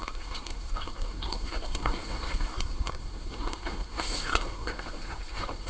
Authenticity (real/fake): fake